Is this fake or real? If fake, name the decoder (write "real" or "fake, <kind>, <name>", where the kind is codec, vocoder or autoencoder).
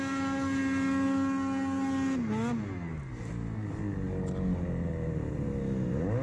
real